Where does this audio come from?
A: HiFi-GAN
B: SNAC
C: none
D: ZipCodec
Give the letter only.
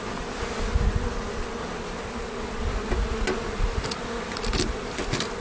C